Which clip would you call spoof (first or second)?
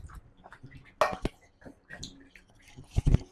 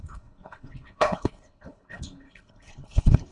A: second